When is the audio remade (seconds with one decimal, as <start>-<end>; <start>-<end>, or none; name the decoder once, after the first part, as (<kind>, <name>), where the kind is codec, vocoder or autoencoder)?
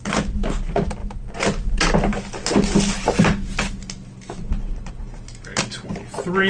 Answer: none